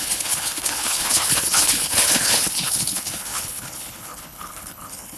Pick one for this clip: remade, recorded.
remade